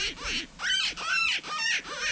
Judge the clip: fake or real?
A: real